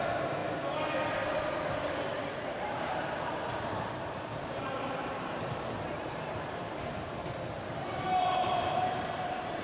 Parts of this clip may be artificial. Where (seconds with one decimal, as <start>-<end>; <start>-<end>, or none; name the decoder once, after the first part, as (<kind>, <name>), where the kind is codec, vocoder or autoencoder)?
0.0-0.4 (vocoder, BigVGAN v2); 3.5-6.7; 7.5-9.6